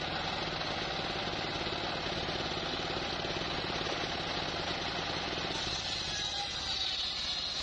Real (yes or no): yes